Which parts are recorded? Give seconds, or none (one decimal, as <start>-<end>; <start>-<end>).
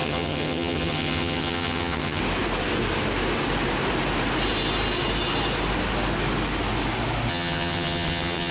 2.2-7.3